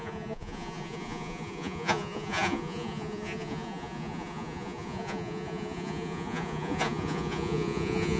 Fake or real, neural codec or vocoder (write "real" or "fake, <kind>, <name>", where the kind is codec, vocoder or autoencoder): fake, vocoder, Vocos